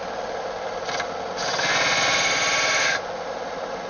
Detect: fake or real real